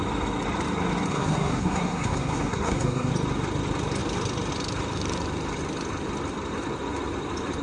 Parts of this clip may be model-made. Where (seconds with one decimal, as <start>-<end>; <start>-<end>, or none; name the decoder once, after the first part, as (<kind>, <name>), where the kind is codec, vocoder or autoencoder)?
1.1-3.1 (codec, SNAC)